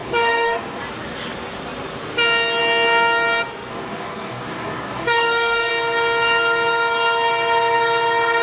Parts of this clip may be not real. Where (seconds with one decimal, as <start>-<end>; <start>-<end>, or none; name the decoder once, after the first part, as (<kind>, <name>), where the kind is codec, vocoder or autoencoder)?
0.0-0.8 (codec, DAC); 3.7-5.7